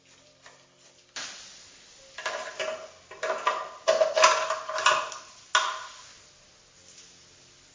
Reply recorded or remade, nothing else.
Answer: recorded